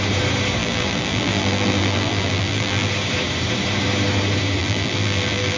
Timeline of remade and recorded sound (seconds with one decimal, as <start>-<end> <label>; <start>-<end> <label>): 0.0-0.6 recorded; 0.6-2.9 remade; 2.9-4.6 recorded; 4.6-5.6 remade